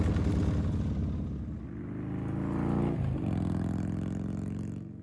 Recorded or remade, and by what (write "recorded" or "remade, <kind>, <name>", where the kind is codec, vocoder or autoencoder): recorded